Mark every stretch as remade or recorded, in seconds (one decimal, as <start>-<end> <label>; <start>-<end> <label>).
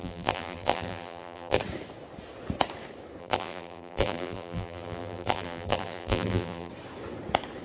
0.0-1.6 remade; 1.6-3.2 recorded; 3.2-6.7 remade; 6.7-7.6 recorded